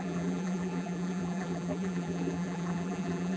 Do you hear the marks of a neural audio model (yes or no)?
yes